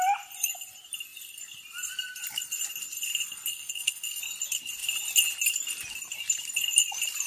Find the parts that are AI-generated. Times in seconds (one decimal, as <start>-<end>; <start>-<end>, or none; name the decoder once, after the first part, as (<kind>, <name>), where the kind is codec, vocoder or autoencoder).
3.5-4.2 (codec, SNAC)